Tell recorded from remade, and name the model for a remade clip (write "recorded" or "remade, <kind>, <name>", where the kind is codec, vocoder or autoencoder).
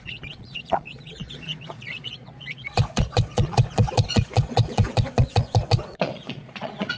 remade, vocoder, Vocos